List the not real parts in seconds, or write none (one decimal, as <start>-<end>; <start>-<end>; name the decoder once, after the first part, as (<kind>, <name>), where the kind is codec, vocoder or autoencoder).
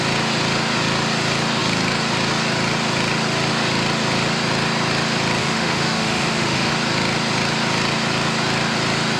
5.4-6.7 (autoencoder, DAC-VAE)